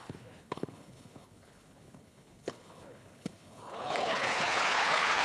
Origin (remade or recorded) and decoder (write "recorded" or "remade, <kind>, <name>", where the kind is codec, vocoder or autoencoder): remade, codec, HILCodec